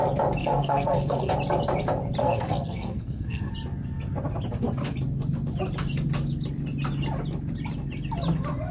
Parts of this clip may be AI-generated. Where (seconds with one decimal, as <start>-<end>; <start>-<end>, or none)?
0.4-1.3; 2.2-3.5